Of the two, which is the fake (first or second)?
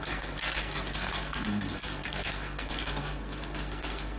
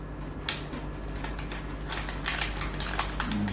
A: first